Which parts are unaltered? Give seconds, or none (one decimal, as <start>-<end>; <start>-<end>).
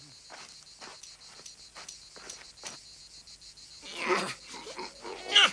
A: 0.0-5.5